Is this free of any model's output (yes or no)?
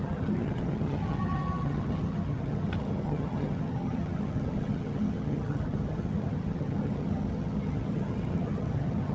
no